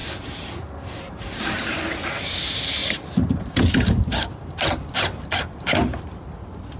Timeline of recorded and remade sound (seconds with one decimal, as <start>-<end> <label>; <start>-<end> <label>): 0.0-1.8 remade; 1.8-2.8 recorded; 2.8-4.9 remade; 4.9-6.8 recorded